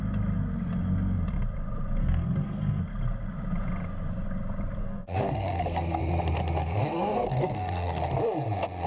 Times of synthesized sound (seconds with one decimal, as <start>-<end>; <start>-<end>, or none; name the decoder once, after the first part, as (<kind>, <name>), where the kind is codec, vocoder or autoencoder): 2.0-2.8 (codec, SNAC); 4.8-6.0; 6.6-8.0